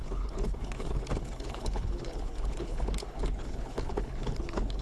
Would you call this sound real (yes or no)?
no